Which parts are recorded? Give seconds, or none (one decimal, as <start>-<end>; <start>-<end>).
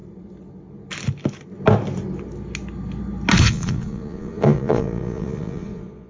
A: 0.0-3.4